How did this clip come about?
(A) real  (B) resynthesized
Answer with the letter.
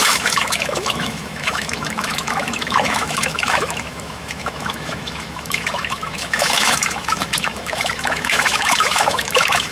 B